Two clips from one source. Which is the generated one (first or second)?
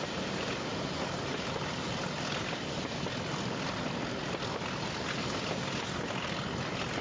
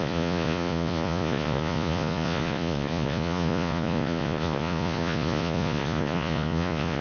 second